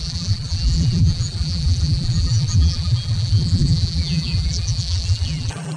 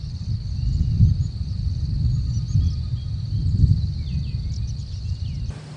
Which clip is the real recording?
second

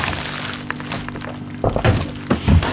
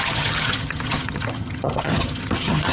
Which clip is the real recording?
first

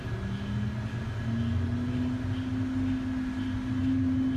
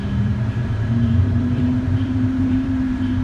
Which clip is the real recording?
first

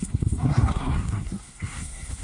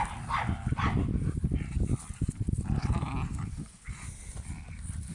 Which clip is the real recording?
second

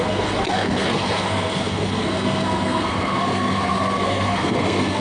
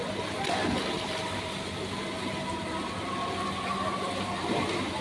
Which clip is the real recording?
second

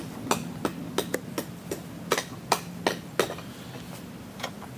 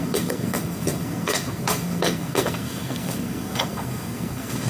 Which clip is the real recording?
first